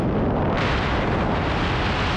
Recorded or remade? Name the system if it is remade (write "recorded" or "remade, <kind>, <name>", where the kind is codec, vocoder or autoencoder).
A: recorded